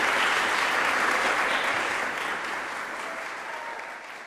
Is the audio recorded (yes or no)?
yes